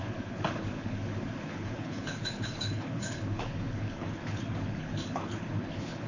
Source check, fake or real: fake